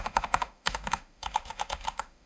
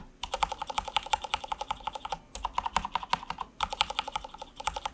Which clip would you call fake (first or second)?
first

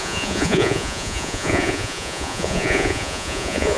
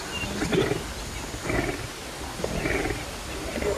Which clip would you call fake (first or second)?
first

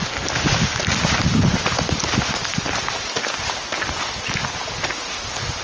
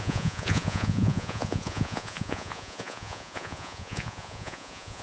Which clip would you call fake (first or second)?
second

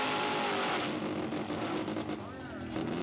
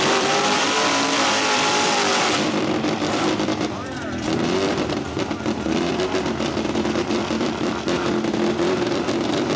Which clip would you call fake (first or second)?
second